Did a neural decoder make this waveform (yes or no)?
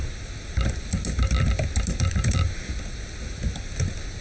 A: no